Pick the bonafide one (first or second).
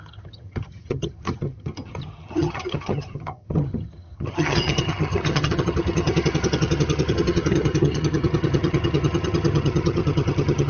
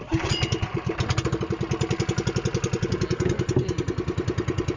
second